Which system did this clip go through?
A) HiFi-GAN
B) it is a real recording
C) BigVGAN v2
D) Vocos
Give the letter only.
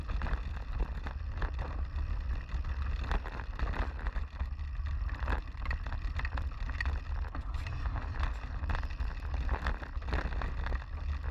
B